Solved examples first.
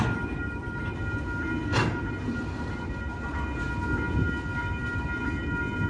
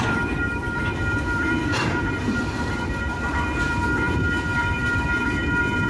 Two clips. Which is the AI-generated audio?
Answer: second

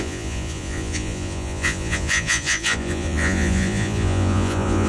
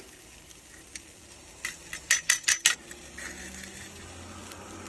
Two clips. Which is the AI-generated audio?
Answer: first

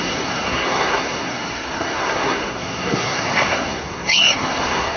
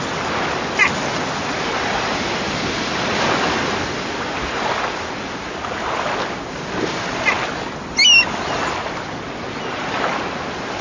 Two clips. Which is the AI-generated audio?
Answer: first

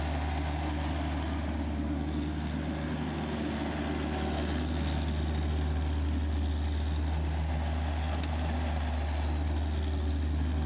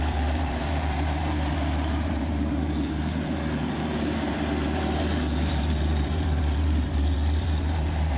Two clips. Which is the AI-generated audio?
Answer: second